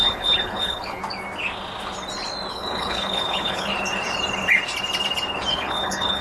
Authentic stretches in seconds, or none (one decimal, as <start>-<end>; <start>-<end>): 1.0-2.5; 3.7-5.5